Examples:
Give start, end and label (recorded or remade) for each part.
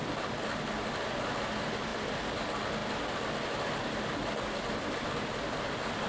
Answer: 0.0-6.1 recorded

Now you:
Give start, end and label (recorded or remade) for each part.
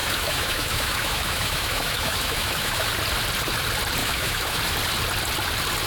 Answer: 0.0-2.9 remade; 2.9-4.0 recorded; 4.0-4.6 remade; 4.6-5.9 recorded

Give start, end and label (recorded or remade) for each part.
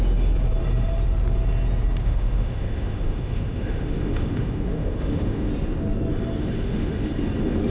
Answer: 0.0-2.0 recorded; 2.0-5.5 remade; 5.5-6.4 recorded; 6.4-7.1 remade; 7.1-7.7 recorded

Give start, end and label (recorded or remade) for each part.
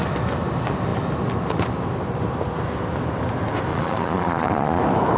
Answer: 0.0-3.7 recorded; 3.7-4.8 remade; 4.8-5.2 recorded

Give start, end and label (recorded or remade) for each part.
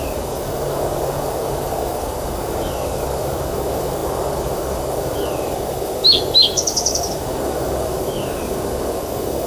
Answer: 0.0-9.5 remade